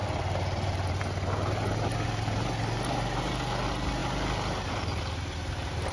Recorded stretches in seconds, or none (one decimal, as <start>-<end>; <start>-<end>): 0.0-5.9